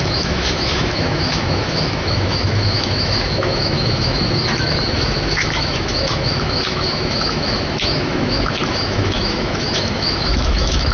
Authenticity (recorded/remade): remade